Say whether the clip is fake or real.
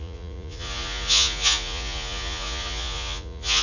fake